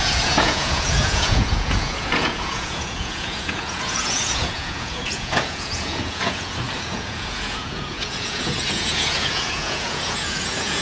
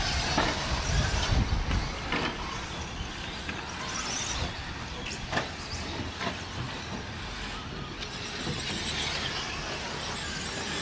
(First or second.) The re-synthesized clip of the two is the first